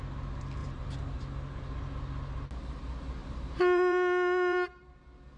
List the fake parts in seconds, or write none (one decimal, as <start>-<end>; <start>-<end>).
0.6-1.2; 3.2-5.0